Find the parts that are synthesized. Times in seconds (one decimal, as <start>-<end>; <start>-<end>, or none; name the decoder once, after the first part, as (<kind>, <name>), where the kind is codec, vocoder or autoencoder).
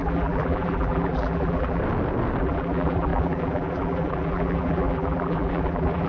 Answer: 0.0-1.8 (vocoder, BigVGAN v2); 2.4-6.1